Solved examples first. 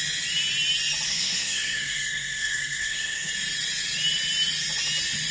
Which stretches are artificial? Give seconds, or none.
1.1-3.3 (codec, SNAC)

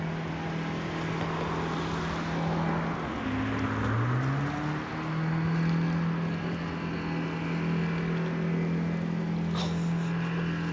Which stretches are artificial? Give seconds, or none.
none

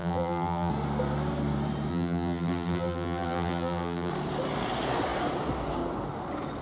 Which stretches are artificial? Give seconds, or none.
0.0-0.7 (vocoder, BigVGAN v2); 1.9-4.1

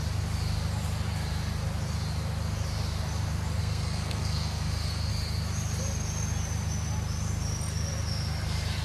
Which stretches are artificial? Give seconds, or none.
3.6-5.1 (codec, SNAC)

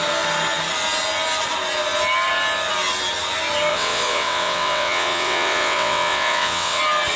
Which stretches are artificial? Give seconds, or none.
3.7-6.8 (vocoder, WaveNeXt)

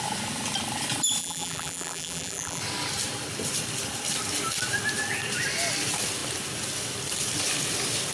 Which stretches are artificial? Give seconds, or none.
1.2-2.6 (vocoder, BigVGAN v2)